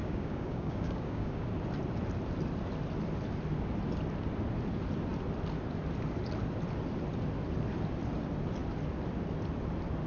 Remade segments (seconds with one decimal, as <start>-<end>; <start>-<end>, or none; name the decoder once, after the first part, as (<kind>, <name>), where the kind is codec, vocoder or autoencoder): 0.0-1.5 (codec, DAC)